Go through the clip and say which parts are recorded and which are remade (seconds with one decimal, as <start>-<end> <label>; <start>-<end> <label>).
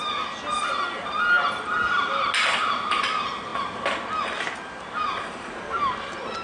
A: 0.0-6.4 recorded